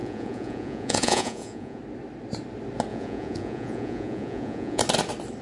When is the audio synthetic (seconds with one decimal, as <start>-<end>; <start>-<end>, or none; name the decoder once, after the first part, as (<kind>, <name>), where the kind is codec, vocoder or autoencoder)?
0.0-1.8 (vocoder, Vocos); 2.9-4.8